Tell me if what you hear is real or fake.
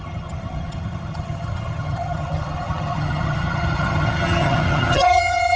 fake